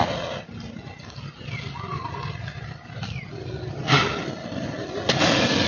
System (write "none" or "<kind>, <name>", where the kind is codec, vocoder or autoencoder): none